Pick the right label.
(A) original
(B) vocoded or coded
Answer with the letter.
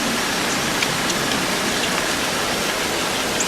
A